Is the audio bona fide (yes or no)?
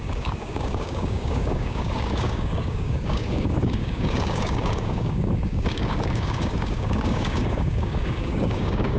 no